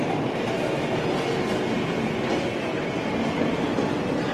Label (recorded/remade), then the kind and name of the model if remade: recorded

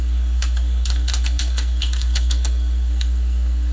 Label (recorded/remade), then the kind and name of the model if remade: remade, codec, SNAC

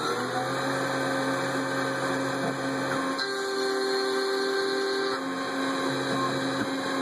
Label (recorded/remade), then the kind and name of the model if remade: recorded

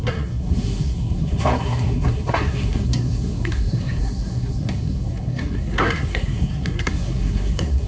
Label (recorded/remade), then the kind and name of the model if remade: remade, codec, SNAC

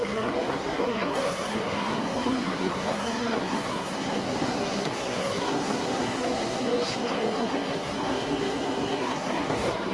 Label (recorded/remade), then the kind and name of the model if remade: remade, codec, SNAC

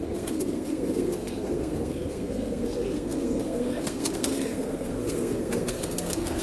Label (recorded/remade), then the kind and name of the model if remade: remade, codec, SNAC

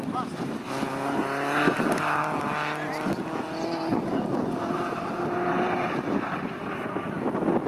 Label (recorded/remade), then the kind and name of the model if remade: recorded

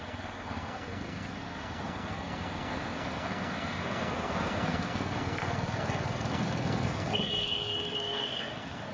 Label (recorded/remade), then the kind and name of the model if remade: remade, codec, SNAC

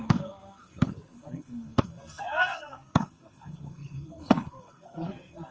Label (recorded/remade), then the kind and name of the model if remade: remade, codec, SNAC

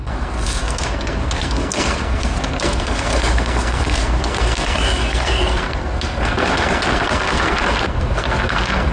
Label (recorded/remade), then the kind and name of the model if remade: remade, codec, SNAC